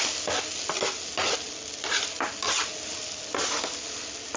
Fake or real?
real